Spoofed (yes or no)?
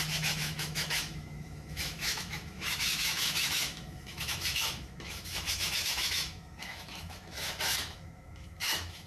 yes